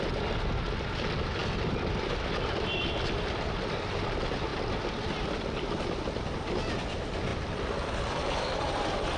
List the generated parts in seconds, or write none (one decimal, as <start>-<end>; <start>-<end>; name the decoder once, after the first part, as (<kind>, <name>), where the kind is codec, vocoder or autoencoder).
none

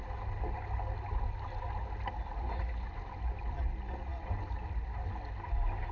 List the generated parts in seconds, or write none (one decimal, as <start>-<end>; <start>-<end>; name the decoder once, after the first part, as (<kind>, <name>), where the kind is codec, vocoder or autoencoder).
none

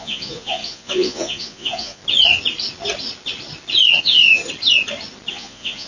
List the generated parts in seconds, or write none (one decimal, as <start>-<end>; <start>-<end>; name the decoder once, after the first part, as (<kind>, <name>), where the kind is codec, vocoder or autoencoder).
0.0-2.0 (vocoder, Vocos); 4.0-4.4; 5.3-5.9

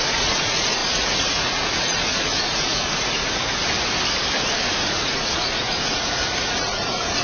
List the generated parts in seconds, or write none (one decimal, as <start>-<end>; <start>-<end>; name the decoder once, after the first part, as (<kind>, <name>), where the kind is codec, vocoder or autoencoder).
0.0-3.6 (vocoder, Vocos); 4.7-7.2